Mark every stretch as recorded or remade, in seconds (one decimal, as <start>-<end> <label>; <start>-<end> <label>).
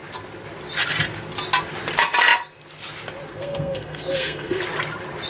0.0-3.3 recorded; 3.3-4.6 remade; 4.6-5.3 recorded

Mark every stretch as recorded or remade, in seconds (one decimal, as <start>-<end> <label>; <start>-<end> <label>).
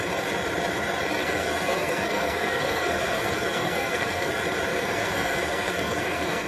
0.0-1.2 recorded; 1.2-4.3 remade; 4.3-4.7 recorded; 4.7-6.5 remade